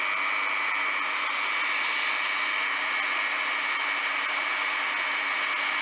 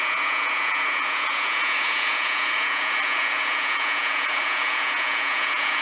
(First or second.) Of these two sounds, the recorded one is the first